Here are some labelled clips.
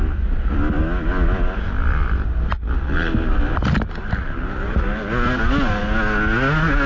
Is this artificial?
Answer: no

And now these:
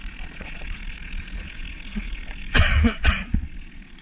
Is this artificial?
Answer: yes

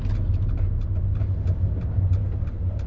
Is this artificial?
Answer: no